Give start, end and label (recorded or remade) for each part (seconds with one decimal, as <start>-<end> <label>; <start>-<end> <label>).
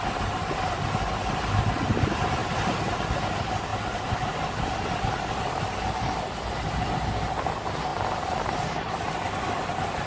0.0-10.1 recorded